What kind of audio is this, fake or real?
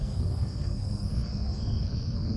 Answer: fake